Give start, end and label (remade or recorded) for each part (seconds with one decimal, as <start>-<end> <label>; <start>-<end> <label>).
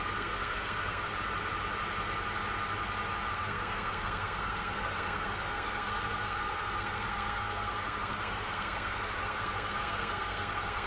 0.0-1.1 remade; 1.1-3.3 recorded; 3.3-10.9 remade